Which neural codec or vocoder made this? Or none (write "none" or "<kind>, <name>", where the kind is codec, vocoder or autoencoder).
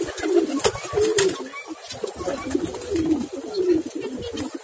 none